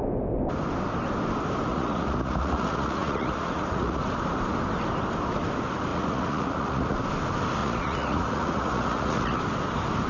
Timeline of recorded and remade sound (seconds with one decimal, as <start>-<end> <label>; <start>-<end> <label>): 0.0-1.7 recorded; 1.7-4.0 remade; 4.0-5.9 recorded; 5.9-7.0 remade; 7.0-7.6 recorded; 7.6-9.4 remade; 9.4-10.1 recorded